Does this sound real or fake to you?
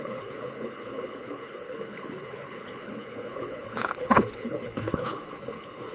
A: fake